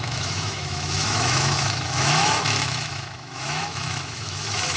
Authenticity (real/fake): fake